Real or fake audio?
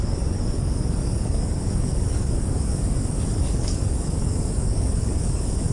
fake